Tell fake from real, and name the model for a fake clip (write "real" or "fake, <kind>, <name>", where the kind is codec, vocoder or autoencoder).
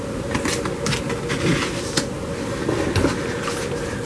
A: real